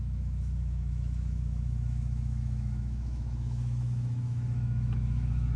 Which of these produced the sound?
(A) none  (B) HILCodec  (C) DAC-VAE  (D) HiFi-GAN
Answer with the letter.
C